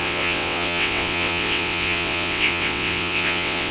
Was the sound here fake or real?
fake